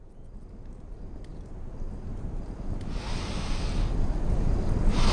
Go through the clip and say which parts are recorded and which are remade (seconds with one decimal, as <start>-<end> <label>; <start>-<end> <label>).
0.0-5.1 recorded